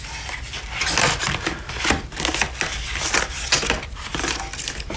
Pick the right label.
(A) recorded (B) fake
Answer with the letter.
A